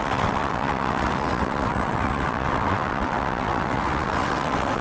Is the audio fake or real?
fake